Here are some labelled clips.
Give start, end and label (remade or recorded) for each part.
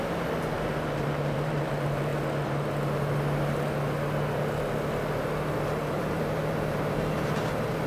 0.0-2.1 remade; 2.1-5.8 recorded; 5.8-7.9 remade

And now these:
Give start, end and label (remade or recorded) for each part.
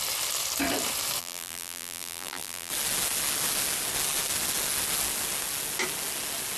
0.0-1.2 recorded; 1.2-2.7 remade; 2.7-6.6 recorded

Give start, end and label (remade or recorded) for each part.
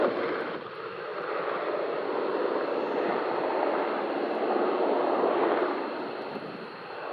0.0-1.1 recorded; 1.1-1.8 remade; 1.8-3.1 recorded; 3.1-5.0 remade; 5.0-7.1 recorded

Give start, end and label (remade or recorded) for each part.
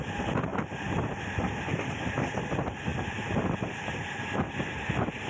0.0-0.5 recorded; 0.5-2.4 remade; 2.4-2.9 recorded; 2.9-3.8 remade; 3.8-5.3 recorded